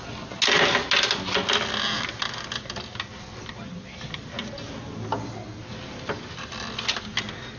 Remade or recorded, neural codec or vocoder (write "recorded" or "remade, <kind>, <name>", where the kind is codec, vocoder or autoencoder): recorded